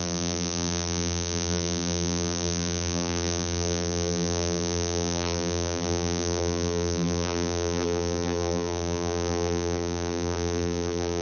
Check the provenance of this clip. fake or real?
fake